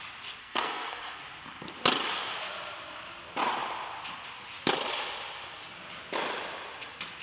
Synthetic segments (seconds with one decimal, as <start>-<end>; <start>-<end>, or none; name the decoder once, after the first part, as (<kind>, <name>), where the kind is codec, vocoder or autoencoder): 0.4-1.2 (codec, SNAC)